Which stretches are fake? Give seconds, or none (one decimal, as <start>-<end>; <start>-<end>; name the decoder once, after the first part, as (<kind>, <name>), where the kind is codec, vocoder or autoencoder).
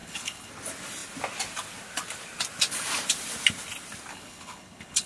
0.0-0.5 (codec, HILCodec); 4.1-5.1